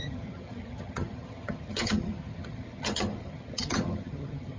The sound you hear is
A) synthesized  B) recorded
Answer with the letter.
A